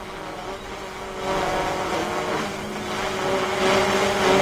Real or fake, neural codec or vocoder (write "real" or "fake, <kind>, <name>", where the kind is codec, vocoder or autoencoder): real